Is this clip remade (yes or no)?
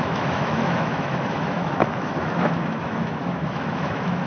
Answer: yes